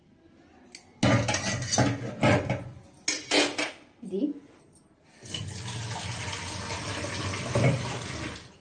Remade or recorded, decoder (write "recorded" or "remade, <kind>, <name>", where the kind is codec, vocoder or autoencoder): recorded